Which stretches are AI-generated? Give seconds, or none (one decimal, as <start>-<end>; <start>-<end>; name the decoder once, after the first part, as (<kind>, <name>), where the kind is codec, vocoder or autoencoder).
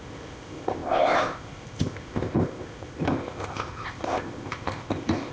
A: 0.0-5.3 (codec, ZipCodec)